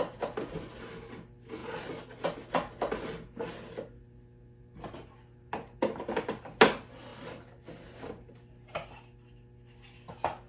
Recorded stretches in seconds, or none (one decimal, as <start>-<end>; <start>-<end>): 0.0-10.5